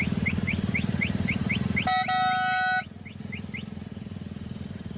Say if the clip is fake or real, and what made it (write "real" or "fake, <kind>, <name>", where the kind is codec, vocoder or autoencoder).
real